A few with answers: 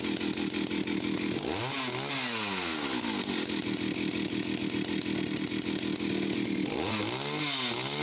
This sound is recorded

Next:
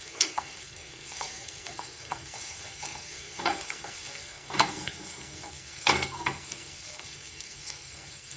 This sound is remade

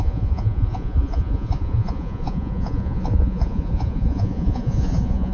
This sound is remade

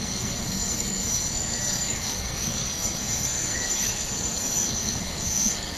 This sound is remade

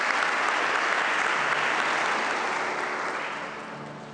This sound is recorded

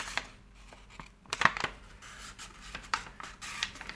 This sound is remade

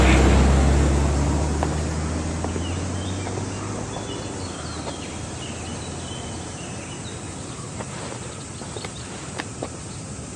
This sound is recorded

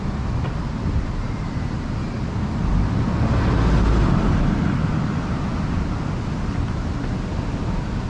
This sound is recorded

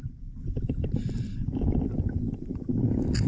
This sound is recorded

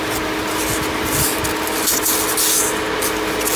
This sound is recorded